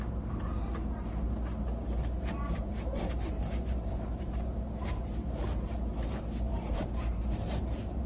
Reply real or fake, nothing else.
fake